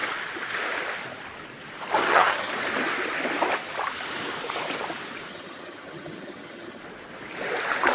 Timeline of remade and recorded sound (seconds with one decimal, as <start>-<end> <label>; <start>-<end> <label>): 0.0-2.0 recorded; 2.0-2.5 remade; 2.5-5.3 recorded; 5.3-6.8 remade; 6.8-7.9 recorded